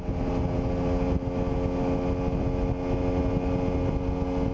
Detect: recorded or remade recorded